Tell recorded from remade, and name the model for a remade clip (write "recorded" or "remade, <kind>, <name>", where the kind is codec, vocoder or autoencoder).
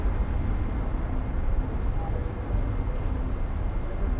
recorded